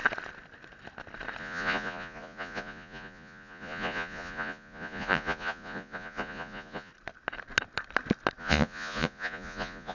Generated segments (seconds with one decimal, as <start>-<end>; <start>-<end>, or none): 1.4-6.9; 8.4-9.9